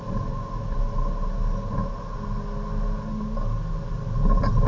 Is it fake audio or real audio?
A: real